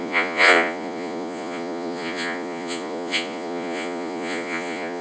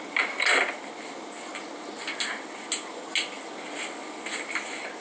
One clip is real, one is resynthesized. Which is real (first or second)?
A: second